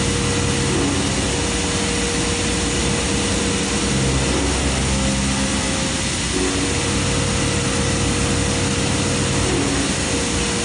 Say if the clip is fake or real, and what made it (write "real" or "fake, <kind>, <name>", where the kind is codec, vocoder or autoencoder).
real